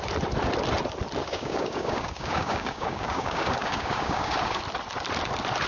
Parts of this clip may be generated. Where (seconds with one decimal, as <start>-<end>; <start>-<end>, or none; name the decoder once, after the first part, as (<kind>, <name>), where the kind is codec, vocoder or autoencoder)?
1.2-4.6 (codec, DAC)